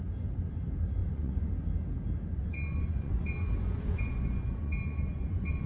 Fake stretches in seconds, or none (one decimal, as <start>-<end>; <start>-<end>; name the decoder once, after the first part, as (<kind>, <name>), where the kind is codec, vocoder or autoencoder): 1.0-1.5 (vocoder, Vocos); 2.3-5.7